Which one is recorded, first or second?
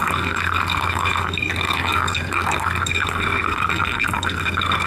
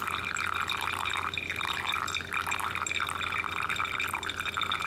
second